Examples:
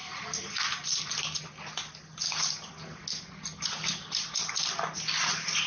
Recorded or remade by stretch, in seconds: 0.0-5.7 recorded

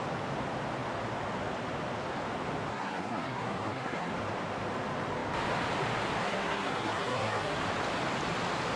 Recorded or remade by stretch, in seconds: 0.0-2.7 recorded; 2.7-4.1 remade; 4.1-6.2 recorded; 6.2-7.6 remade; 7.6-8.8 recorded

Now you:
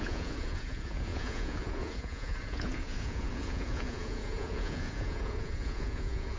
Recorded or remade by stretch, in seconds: 0.0-6.4 remade

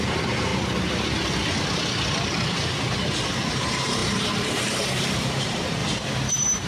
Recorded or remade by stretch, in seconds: 0.0-0.5 remade; 0.5-3.5 recorded; 3.5-5.8 remade; 5.8-6.3 recorded; 6.3-6.7 remade

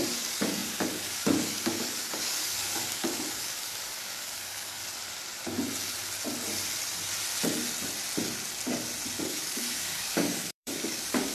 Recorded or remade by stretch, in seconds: 0.0-4.8 remade; 4.8-9.2 recorded; 9.2-11.3 remade